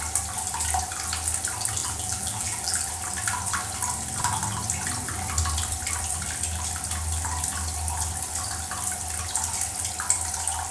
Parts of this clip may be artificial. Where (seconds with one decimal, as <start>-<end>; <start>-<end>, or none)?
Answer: 1.8-2.9